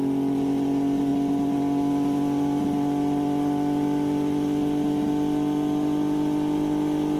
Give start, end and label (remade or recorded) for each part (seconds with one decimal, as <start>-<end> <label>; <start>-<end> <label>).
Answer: 0.0-7.2 recorded